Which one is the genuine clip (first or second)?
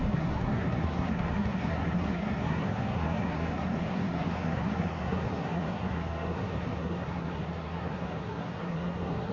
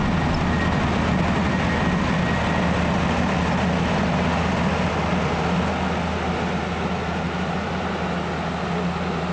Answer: second